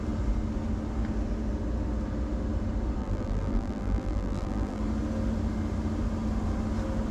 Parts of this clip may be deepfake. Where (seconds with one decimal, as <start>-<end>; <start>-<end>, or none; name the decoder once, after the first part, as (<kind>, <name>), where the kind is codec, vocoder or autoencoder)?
3.0-4.8 (vocoder, BigVGAN v2)